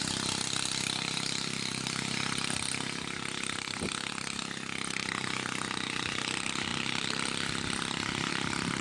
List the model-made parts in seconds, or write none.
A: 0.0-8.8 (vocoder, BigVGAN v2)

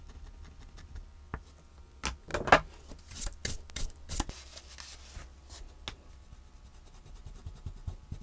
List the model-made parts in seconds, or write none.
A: none

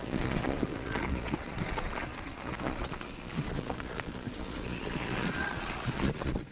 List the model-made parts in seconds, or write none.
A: 0.0-6.5 (vocoder, Vocos)